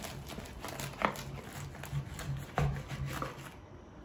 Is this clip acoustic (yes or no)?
yes